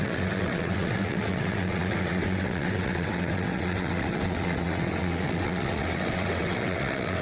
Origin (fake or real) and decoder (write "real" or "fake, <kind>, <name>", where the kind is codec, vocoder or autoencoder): fake, vocoder, WaveNeXt